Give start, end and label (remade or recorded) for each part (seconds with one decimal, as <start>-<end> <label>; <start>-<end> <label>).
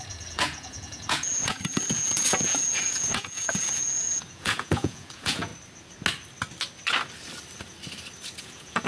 0.0-5.5 remade; 5.5-8.4 recorded; 8.4-8.9 remade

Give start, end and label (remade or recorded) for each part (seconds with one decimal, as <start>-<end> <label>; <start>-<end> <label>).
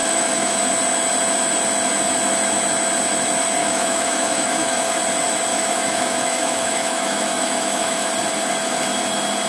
0.0-0.6 remade; 0.6-3.6 recorded; 3.6-5.0 remade; 5.0-5.5 recorded; 5.5-8.1 remade; 8.1-9.5 recorded